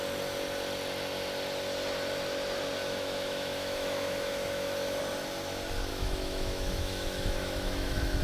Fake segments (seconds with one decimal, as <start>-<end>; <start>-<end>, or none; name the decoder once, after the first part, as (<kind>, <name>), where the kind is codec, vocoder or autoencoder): 2.8-5.0 (autoencoder, DAC-VAE); 5.9-8.2